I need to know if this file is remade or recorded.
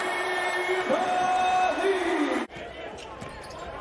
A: remade